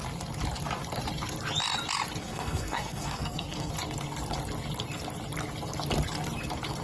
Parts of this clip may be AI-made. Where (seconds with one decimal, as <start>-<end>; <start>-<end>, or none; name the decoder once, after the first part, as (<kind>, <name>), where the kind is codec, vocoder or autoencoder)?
2.2-3.7 (codec, SNAC)